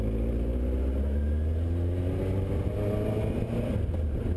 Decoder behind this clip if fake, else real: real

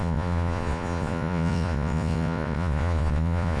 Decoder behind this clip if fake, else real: fake, vocoder, Vocos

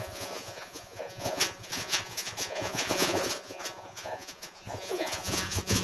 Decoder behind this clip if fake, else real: fake, vocoder, Vocos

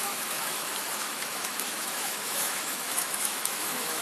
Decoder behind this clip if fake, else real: fake, autoencoder, DAC-VAE